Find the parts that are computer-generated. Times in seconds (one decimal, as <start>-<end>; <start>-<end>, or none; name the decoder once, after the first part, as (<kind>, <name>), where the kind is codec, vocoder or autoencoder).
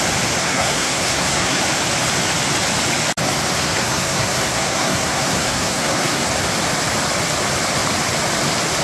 0.4-1.6 (codec, SNAC); 3.6-6.3